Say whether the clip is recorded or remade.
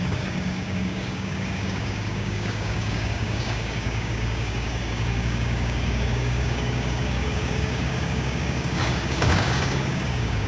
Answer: remade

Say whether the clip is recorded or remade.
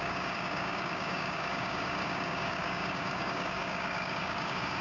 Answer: remade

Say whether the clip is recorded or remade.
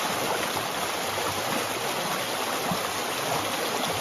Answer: recorded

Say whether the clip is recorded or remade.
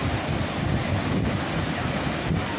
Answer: recorded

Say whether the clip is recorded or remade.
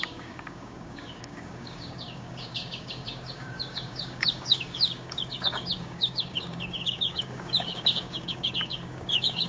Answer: remade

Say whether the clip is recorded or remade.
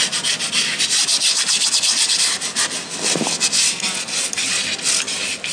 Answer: recorded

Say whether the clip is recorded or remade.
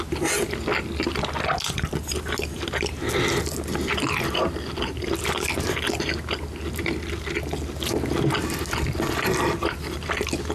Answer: recorded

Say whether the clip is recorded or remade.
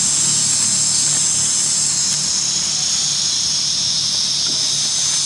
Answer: recorded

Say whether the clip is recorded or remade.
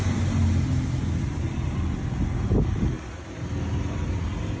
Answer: recorded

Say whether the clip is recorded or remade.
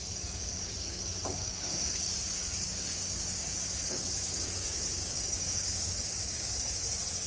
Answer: remade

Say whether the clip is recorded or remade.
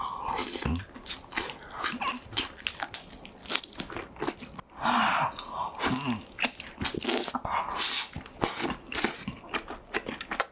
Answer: recorded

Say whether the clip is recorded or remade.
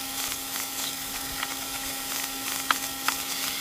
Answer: remade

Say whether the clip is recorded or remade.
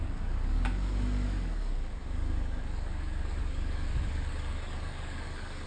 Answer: remade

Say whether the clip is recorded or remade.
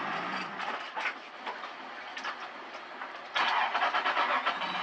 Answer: recorded